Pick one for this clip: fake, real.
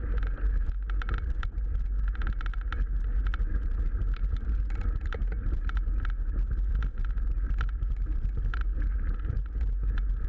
real